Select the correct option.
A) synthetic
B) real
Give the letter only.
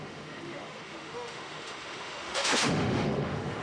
A